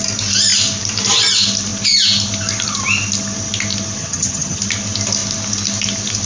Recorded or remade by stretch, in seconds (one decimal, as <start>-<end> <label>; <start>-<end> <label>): 0.0-4.0 recorded; 4.0-4.6 remade; 4.6-6.3 recorded